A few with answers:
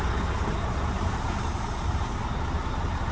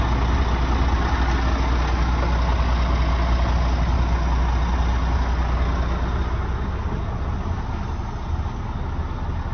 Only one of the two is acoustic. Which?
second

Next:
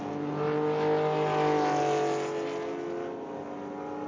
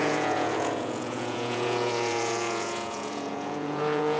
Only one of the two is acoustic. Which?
first